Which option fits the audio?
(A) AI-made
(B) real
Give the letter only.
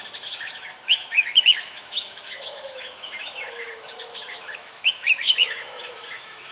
A